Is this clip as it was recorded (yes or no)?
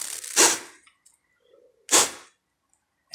yes